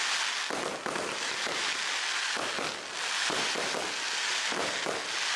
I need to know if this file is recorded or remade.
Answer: recorded